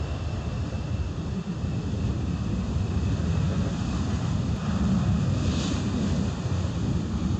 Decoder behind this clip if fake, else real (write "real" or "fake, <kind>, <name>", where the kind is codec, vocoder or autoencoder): real